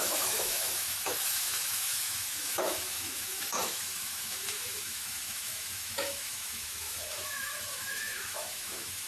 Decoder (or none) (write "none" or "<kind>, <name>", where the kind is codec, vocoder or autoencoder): autoencoder, DAC-VAE